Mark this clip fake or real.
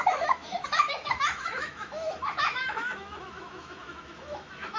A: fake